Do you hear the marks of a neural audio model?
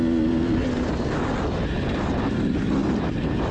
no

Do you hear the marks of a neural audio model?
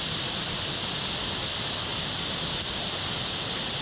no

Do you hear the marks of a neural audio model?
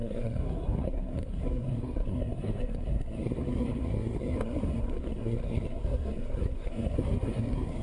yes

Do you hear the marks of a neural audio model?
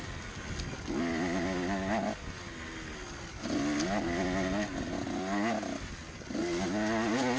no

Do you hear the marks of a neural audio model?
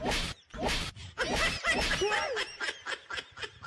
no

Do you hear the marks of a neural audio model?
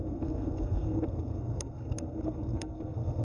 yes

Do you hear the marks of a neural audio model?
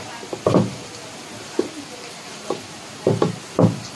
no